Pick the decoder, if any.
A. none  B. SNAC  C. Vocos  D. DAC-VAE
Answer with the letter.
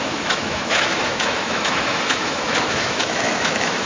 D